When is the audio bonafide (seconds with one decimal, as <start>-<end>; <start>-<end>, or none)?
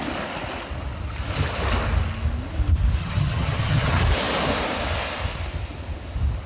0.0-3.0; 4.0-6.5